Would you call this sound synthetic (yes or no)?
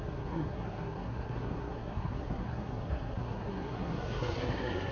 yes